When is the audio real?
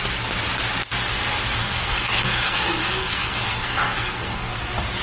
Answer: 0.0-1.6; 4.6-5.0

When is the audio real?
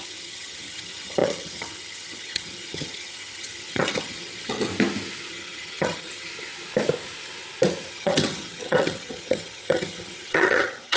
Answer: 4.7-5.3; 6.3-7.9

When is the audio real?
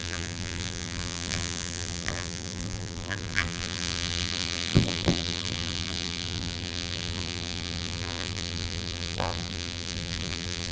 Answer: none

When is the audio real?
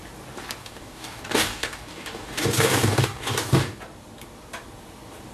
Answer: 0.0-0.6; 3.8-5.3